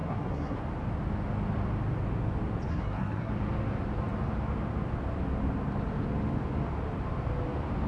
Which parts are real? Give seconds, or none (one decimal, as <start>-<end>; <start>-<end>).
0.6-2.7; 3.3-7.9